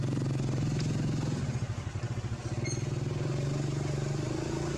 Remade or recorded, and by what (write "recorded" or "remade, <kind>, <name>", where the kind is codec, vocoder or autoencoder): recorded